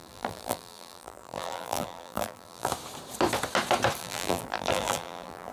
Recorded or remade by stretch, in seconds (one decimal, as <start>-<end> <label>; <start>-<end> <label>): 0.0-2.7 remade; 2.7-4.0 recorded; 4.0-5.5 remade